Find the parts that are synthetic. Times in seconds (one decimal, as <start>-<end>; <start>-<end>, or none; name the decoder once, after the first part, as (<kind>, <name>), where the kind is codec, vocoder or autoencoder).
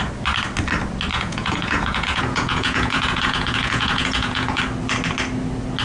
1.1-4.6 (vocoder, Vocos)